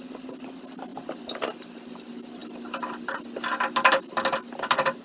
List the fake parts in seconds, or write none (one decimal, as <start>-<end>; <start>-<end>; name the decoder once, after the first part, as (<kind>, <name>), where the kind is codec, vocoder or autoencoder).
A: none